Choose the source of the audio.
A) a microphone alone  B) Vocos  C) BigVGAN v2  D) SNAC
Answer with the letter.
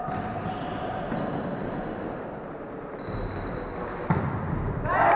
A